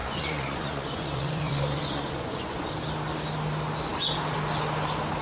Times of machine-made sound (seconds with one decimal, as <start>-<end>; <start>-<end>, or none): 0.0-2.7

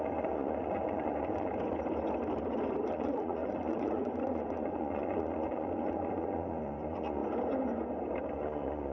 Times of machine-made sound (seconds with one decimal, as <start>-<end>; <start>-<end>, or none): 0.0-1.5; 2.9-7.2; 8.3-8.9

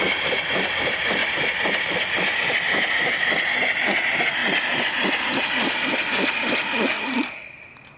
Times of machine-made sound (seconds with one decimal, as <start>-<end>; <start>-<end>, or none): none

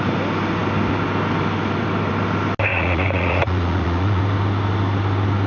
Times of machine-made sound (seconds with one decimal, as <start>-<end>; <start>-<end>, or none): 2.7-4.2

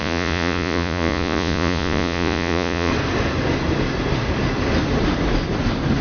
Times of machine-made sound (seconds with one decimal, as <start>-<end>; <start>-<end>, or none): 0.0-2.9

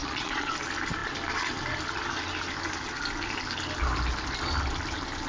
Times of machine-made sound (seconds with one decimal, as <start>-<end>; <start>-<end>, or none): 0.0-0.5